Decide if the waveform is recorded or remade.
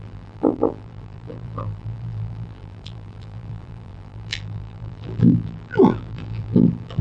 remade